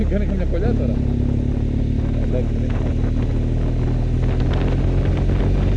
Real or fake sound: real